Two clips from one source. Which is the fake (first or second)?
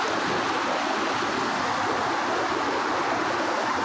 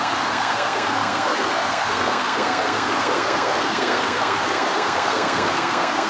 second